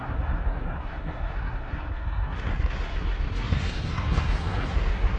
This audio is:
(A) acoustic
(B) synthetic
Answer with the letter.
B